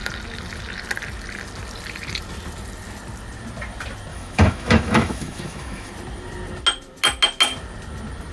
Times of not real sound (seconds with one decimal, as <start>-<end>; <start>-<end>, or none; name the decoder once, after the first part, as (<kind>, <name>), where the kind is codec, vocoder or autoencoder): 4.1-5.9 (autoencoder, DAC-VAE)